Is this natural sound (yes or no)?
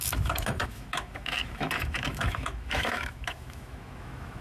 no